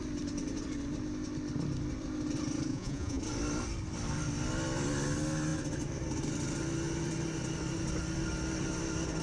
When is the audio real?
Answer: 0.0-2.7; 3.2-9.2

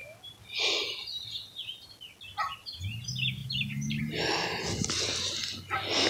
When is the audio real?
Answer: 0.0-6.1

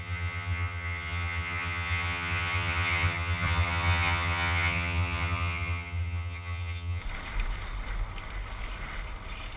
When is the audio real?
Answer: 7.0-9.6

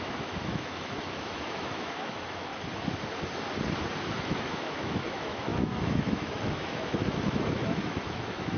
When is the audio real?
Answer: 2.5-4.2

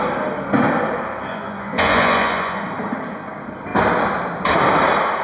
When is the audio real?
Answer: 0.0-1.3; 2.6-5.2

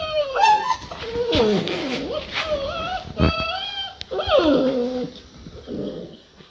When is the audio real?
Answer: 0.9-1.4; 1.8-5.7

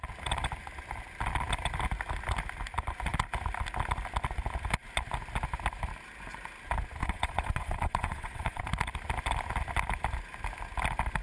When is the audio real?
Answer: 0.0-7.0; 8.6-11.2

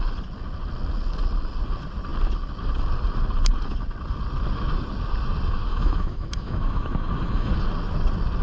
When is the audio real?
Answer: 0.0-5.7; 7.5-8.4